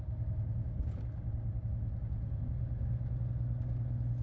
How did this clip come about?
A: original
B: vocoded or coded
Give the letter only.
A